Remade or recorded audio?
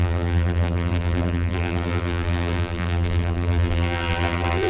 remade